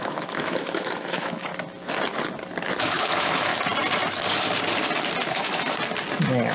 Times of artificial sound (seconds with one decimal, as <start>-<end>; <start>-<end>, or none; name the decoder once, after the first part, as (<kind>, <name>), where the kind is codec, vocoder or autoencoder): 0.0-1.5 (autoencoder, DAC-VAE); 2.8-3.5